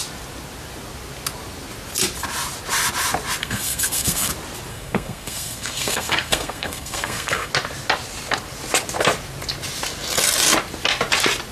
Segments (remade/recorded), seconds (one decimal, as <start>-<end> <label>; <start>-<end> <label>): 0.0-3.4 recorded; 3.4-4.3 remade; 4.3-4.7 recorded; 4.7-7.5 remade; 7.5-11.5 recorded